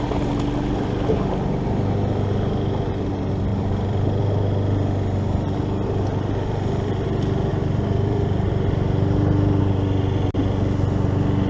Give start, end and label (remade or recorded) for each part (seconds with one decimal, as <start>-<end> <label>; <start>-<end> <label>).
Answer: 0.0-3.5 recorded; 3.5-4.2 remade; 4.2-7.5 recorded; 7.5-9.6 remade; 9.6-11.5 recorded